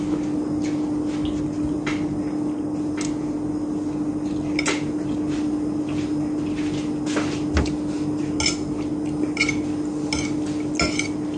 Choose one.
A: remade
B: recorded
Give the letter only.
B